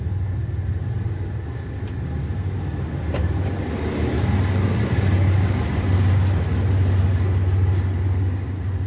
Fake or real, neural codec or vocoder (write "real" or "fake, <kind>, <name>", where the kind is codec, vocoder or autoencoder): real